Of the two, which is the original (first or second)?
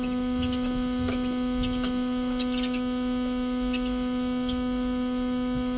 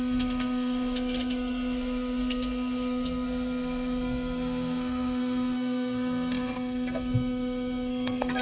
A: first